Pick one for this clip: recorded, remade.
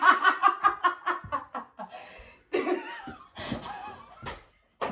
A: recorded